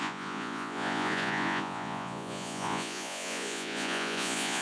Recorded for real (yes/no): no